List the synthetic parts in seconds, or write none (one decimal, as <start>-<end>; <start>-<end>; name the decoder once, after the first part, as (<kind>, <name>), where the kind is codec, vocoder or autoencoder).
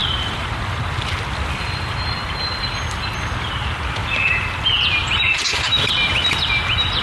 0.0-0.8 (vocoder, BigVGAN v2); 4.0-4.6